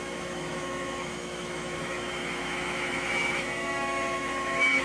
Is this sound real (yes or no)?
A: no